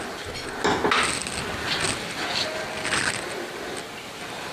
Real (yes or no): yes